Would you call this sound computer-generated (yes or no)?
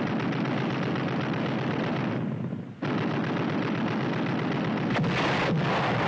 no